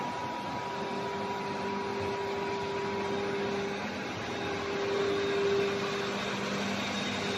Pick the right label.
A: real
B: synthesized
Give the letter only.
A